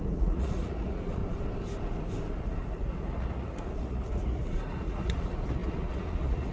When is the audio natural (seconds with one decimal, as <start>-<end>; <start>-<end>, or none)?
1.2-2.4